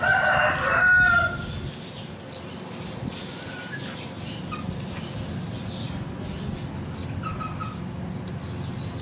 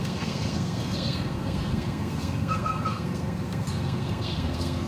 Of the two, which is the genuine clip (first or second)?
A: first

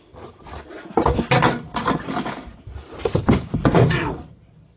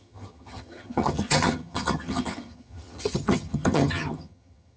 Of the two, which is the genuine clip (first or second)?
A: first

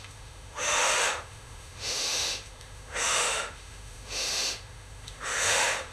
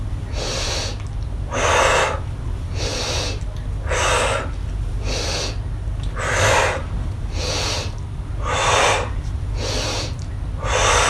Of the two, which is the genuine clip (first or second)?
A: second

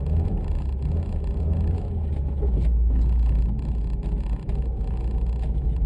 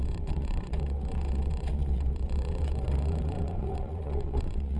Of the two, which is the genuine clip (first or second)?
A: first